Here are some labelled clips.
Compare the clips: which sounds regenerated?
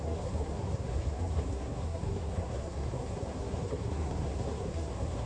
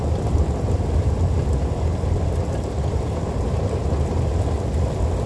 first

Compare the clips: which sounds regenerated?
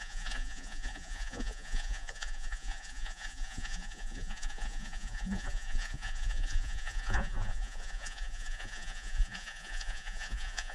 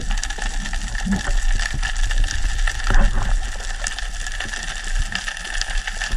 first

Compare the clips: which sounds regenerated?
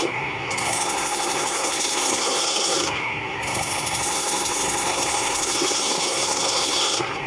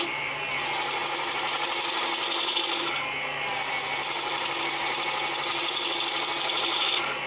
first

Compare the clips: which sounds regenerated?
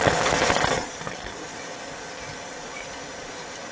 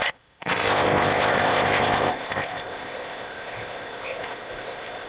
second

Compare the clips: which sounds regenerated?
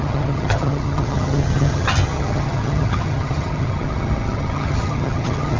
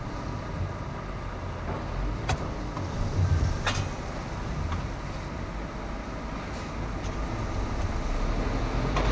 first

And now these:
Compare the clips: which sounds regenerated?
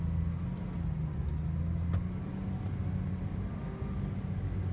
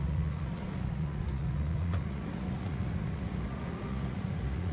second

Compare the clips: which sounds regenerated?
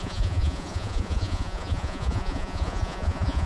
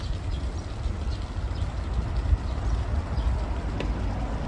first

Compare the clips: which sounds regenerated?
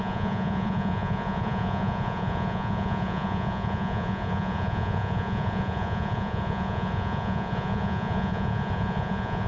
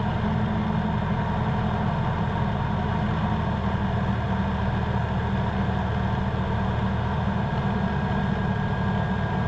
first